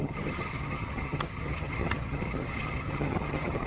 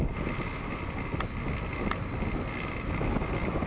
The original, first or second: second